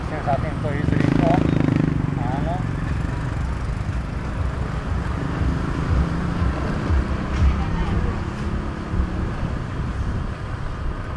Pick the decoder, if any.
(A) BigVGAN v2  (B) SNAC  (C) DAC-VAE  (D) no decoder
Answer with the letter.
D